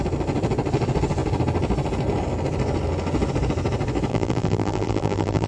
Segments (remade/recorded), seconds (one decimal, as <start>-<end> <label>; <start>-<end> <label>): 0.0-4.1 recorded; 4.1-5.5 remade